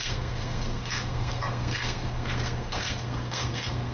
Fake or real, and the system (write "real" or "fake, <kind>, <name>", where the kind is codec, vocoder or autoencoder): fake, codec, SNAC